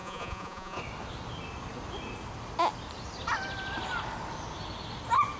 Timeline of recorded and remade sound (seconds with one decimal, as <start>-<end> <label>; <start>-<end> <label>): 0.0-0.8 remade; 0.8-5.4 recorded